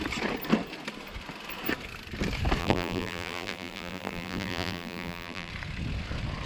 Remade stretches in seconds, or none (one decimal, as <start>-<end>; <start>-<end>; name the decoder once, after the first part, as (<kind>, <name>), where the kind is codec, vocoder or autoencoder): 2.6-5.5 (vocoder, BigVGAN v2)

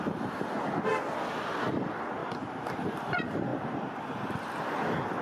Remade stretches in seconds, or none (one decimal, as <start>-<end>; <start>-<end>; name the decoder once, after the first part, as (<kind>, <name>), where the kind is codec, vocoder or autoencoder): 0.0-0.9 (vocoder, BigVGAN v2); 1.7-5.2

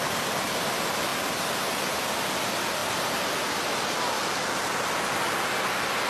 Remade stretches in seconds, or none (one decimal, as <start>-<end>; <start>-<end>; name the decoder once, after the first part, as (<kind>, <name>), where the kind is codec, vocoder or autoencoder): none

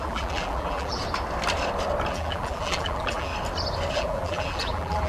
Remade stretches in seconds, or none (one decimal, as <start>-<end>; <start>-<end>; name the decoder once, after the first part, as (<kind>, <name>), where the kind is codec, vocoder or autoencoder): 0.0-1.0 (vocoder, BigVGAN v2); 2.1-3.3; 3.9-5.1

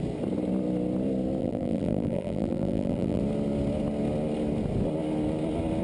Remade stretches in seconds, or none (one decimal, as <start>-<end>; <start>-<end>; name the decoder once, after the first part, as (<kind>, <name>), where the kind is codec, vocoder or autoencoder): 1.4-3.2 (vocoder, BigVGAN v2)

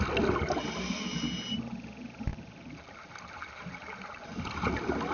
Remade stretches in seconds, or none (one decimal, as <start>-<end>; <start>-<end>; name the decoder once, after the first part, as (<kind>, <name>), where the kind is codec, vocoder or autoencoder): 2.3-4.2 (vocoder, BigVGAN v2)